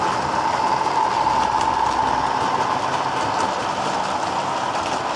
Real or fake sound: real